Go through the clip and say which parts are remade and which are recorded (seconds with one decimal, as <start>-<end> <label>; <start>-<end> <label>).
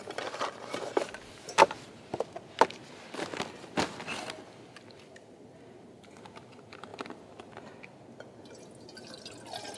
0.0-9.8 recorded